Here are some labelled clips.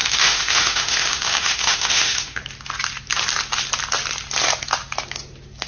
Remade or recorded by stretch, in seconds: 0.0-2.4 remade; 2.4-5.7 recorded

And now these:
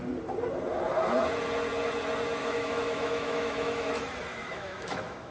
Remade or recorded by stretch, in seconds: 0.0-2.4 recorded; 2.4-3.9 remade; 3.9-4.3 recorded; 4.3-5.3 remade

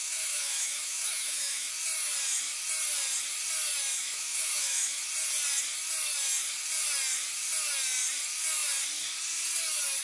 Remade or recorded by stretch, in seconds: 0.0-1.7 remade; 1.7-4.0 recorded; 4.0-5.0 remade; 5.0-10.0 recorded

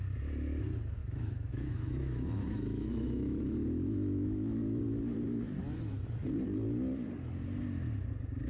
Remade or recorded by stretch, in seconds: 0.0-1.0 recorded; 1.0-4.8 remade; 4.8-8.5 recorded

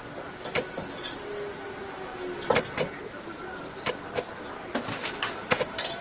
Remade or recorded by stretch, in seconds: 0.0-6.0 recorded

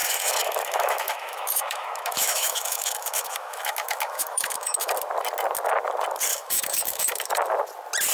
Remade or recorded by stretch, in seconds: 0.0-4.9 remade; 4.9-6.3 recorded; 6.3-7.3 remade; 7.3-8.1 recorded